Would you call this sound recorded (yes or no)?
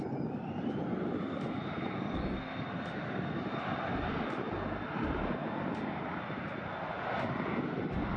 yes